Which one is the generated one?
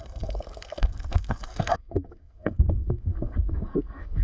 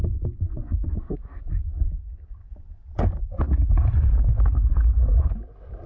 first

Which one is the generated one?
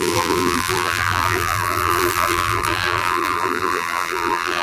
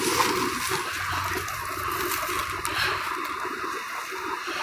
first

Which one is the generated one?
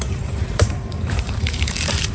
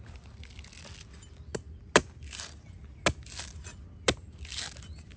first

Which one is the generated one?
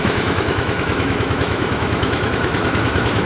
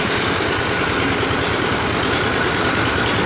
first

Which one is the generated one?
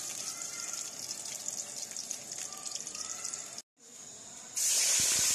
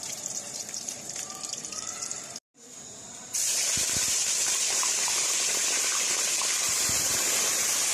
second